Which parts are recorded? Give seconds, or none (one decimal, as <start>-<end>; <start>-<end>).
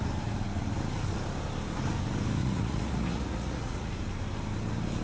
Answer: 0.0-2.4; 3.9-5.0